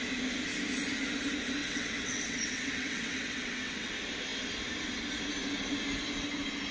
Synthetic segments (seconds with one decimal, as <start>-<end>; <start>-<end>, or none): 1.6-3.9